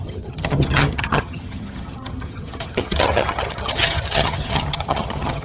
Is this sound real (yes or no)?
no